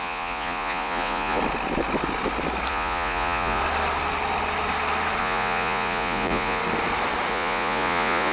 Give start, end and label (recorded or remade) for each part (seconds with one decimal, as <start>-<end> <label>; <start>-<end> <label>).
0.0-1.4 remade; 1.4-2.7 recorded; 2.7-3.6 remade; 3.6-5.2 recorded; 5.2-6.6 remade; 6.6-7.3 recorded; 7.3-8.3 remade